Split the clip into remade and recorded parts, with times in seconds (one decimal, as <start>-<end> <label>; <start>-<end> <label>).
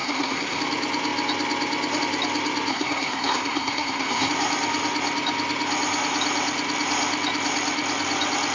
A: 0.0-0.6 remade; 0.6-2.7 recorded; 2.7-4.3 remade; 4.3-8.5 recorded